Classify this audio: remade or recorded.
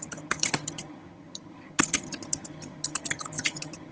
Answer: remade